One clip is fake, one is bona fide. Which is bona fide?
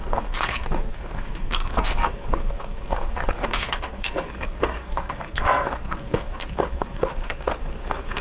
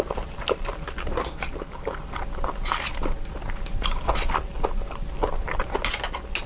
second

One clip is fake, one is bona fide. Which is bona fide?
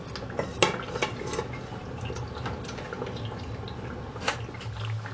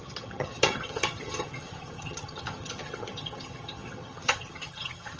first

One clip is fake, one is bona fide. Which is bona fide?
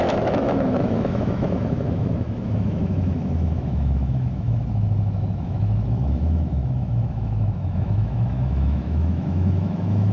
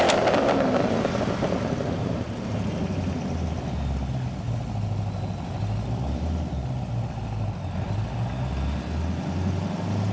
second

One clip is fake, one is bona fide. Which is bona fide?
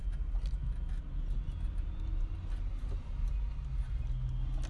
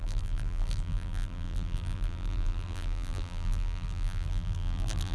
first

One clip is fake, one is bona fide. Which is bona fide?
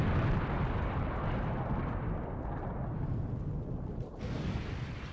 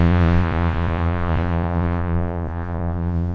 first